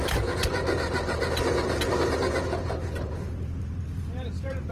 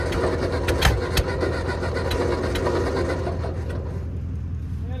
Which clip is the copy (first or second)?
first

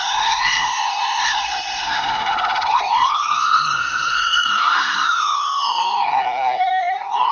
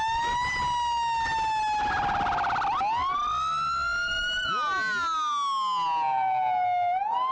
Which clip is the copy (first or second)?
first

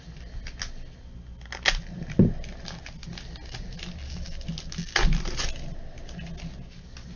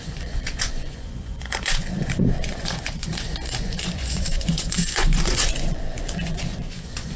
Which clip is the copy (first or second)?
second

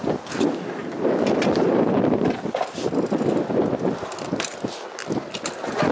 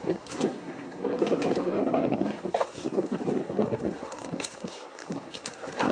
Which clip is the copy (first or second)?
second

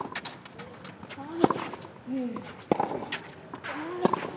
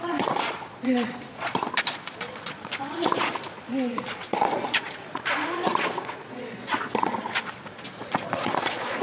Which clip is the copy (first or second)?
second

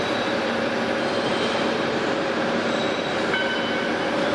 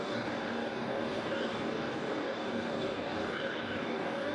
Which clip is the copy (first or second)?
second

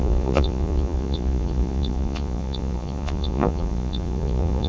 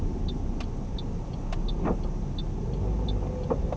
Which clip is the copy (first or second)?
first